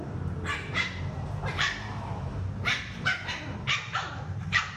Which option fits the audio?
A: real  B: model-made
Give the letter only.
B